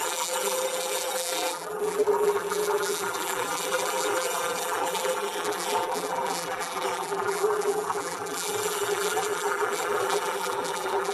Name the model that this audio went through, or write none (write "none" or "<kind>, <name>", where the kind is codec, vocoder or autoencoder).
vocoder, BigVGAN v2